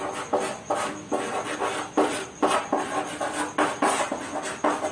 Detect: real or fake real